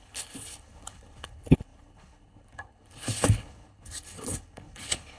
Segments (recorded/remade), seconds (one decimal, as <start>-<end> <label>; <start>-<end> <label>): 0.0-5.2 remade

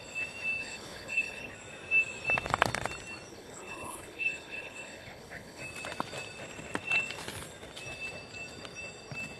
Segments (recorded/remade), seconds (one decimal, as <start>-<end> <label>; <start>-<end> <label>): 0.0-0.6 recorded; 0.6-1.5 remade; 1.5-3.3 recorded; 3.3-5.6 remade; 5.6-9.4 recorded